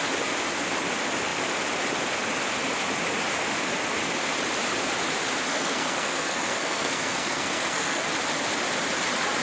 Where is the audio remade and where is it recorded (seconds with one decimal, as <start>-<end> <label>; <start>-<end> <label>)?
0.0-5.5 recorded; 5.5-8.0 remade; 8.0-9.4 recorded